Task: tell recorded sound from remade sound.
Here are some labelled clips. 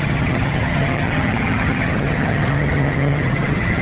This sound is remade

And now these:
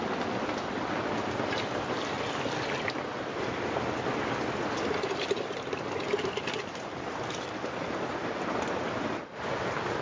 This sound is recorded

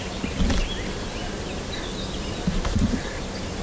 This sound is recorded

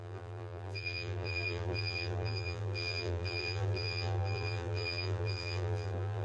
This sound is remade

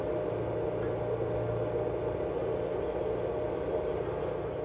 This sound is recorded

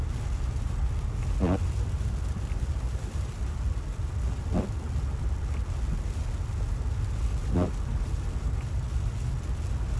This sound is recorded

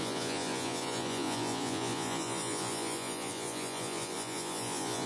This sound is remade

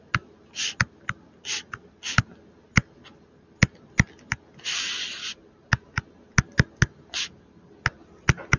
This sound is recorded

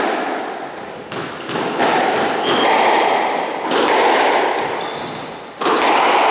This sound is recorded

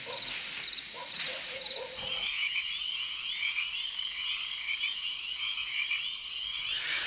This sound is remade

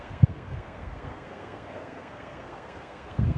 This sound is remade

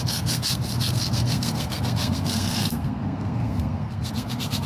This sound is remade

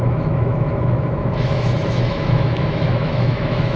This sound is remade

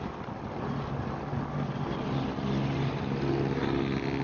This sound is recorded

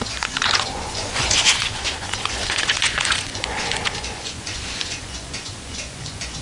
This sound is remade